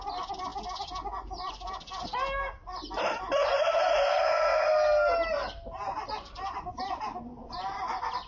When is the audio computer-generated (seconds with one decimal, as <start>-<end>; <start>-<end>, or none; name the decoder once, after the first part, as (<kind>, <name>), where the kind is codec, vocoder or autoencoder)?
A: none